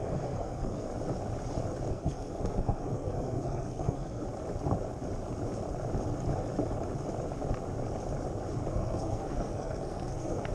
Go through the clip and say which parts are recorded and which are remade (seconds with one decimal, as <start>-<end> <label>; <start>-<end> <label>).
0.0-0.9 remade; 0.9-1.9 recorded; 1.9-4.2 remade; 4.2-8.7 recorded; 8.7-10.5 remade